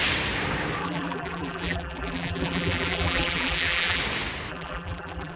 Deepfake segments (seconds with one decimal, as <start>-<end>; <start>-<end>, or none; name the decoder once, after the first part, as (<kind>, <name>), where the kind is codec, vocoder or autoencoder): 0.8-4.0 (vocoder, BigVGAN v2); 4.5-5.4